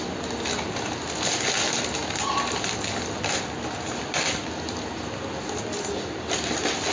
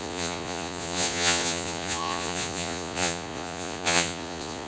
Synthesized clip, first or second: second